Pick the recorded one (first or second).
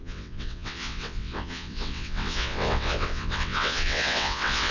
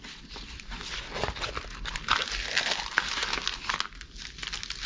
second